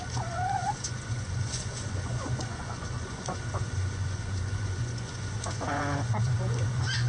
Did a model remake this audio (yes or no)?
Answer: yes